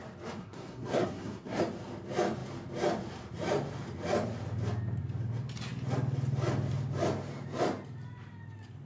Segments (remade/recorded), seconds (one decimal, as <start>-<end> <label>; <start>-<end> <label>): 0.0-0.4 recorded; 0.4-1.6 remade; 1.6-8.9 recorded